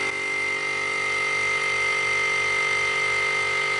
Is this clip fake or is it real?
real